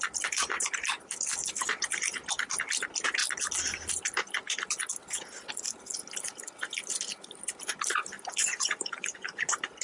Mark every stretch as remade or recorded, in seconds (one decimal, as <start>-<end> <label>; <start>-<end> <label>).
0.0-8.4 recorded; 8.4-9.4 remade; 9.4-9.8 recorded